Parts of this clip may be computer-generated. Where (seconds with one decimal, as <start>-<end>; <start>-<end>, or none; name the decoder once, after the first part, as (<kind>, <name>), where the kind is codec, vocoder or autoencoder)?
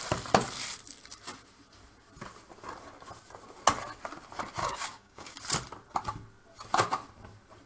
4.6-5.4 (codec, DAC)